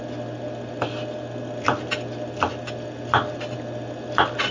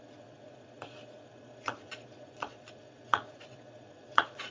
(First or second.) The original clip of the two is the first